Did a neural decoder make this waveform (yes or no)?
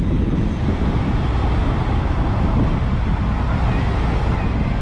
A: no